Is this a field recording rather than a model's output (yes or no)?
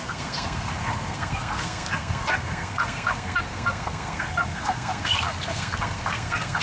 no